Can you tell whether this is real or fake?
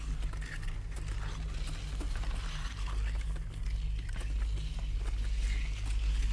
real